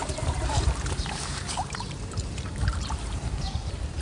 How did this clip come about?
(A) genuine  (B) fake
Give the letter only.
B